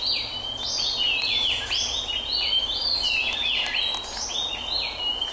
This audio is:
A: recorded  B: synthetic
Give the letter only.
A